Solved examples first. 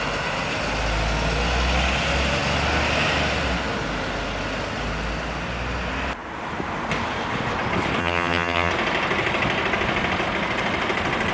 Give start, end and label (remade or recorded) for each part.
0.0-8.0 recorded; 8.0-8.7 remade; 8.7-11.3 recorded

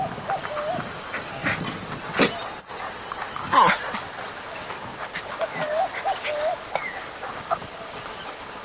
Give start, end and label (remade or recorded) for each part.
0.0-8.6 recorded

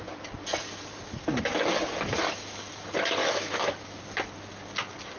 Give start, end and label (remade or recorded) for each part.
0.0-3.2 recorded; 3.2-4.0 remade; 4.0-5.2 recorded

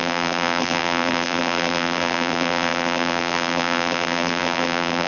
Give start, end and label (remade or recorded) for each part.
0.0-5.1 remade

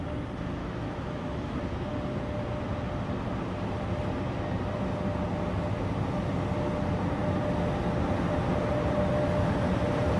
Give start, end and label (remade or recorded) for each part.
0.0-0.6 recorded; 0.6-1.9 remade; 1.9-10.2 recorded

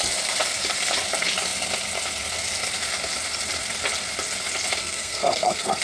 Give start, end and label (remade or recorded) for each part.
0.0-4.8 recorded; 4.8-5.8 remade

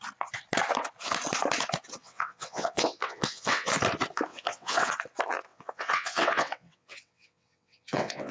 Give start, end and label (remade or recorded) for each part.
0.0-2.0 recorded; 2.0-3.7 remade; 3.7-4.3 recorded; 4.3-4.9 remade; 4.9-5.5 recorded; 5.5-8.3 remade

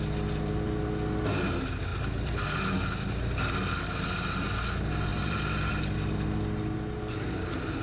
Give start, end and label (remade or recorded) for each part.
0.0-1.9 recorded; 1.9-2.4 remade; 2.4-5.1 recorded; 5.1-5.7 remade; 5.7-7.8 recorded